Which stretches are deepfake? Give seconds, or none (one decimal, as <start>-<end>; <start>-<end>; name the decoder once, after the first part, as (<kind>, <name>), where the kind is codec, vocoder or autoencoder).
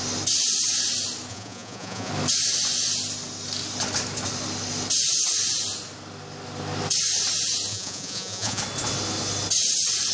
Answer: 1.3-2.1 (vocoder, Vocos); 7.7-8.6